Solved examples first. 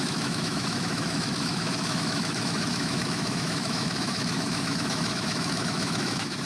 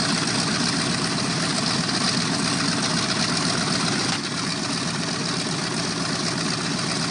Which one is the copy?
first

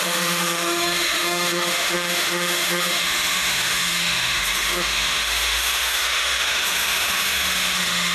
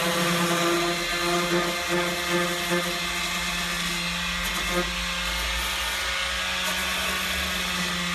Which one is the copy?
first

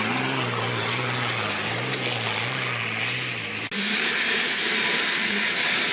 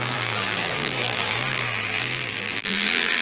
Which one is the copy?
second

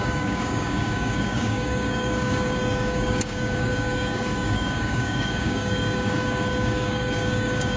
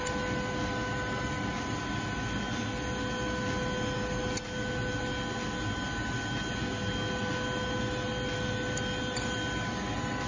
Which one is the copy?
first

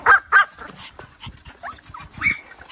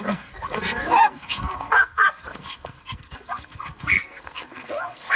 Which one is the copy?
second